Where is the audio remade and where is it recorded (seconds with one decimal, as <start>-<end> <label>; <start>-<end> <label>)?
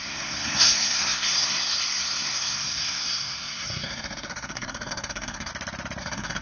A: 0.0-5.5 remade; 5.5-6.0 recorded; 6.0-6.4 remade